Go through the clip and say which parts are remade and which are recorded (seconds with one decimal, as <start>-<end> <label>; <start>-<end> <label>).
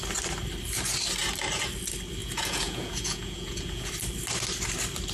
0.0-2.2 recorded; 2.2-3.9 remade; 3.9-5.1 recorded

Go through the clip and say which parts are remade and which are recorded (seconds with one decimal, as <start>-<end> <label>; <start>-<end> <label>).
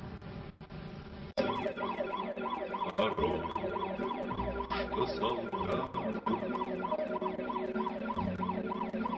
0.0-1.1 recorded; 1.1-4.3 remade; 4.3-9.2 recorded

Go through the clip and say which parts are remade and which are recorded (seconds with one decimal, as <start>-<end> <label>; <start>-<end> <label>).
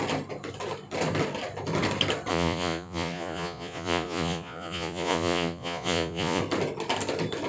0.0-2.3 recorded; 2.3-6.4 remade; 6.4-7.5 recorded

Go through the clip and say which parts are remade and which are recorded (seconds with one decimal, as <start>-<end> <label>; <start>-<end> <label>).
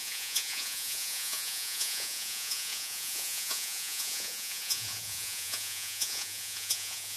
0.0-7.2 remade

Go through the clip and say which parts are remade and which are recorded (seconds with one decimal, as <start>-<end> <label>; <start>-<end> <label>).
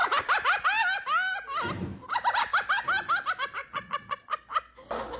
0.0-3.6 recorded; 3.6-4.2 remade; 4.2-5.2 recorded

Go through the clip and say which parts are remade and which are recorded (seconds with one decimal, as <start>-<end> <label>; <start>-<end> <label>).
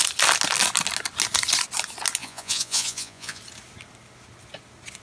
0.0-2.2 recorded; 2.2-3.4 remade; 3.4-5.0 recorded